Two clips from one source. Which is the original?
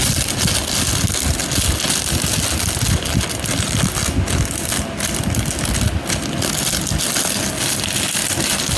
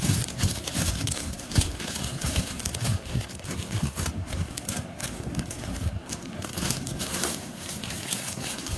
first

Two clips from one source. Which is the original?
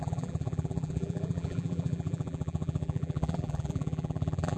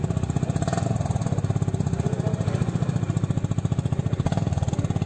second